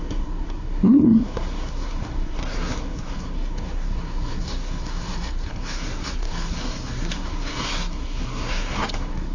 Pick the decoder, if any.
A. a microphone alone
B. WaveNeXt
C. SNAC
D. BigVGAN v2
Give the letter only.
C